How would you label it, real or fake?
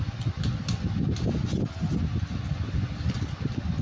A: real